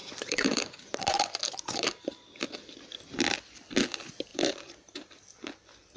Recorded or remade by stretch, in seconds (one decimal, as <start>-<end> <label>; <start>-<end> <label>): 0.0-2.4 remade; 2.4-4.3 recorded; 4.3-5.1 remade; 5.1-6.0 recorded